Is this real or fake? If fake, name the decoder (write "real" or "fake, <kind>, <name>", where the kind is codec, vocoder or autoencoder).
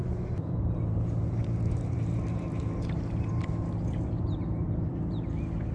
fake, vocoder, BigVGAN v2